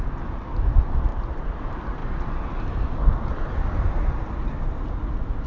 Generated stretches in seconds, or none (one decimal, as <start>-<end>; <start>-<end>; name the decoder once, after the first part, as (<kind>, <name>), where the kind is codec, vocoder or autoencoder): none